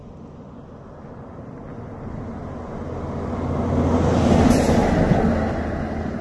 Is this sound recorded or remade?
recorded